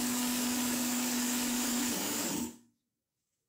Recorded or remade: remade